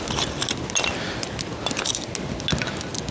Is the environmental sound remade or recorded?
recorded